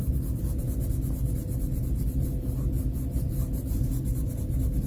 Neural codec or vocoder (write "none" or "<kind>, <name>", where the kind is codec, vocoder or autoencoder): none